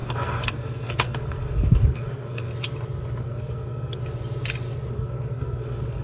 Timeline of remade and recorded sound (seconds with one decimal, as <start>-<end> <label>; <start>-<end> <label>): 0.0-2.5 remade; 2.5-3.2 recorded; 3.2-4.0 remade; 4.0-4.9 recorded; 4.9-6.0 remade